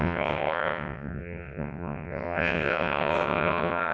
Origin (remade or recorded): remade